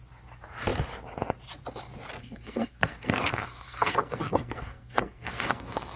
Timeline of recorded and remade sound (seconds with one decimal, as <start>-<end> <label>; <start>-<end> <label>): 0.0-2.2 recorded; 2.2-6.0 remade